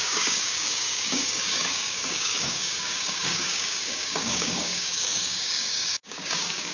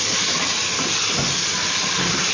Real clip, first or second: second